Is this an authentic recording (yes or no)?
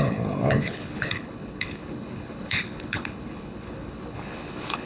no